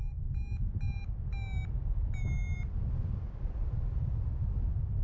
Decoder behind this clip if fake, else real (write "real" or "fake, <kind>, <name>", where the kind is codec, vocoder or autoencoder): real